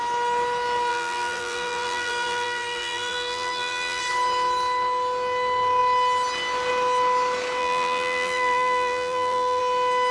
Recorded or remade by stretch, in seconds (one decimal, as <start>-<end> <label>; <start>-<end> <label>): 0.0-0.9 recorded; 0.9-4.0 remade; 4.0-7.6 recorded; 7.6-9.6 remade; 9.6-10.1 recorded